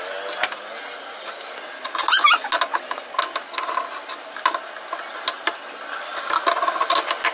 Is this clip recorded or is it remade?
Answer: recorded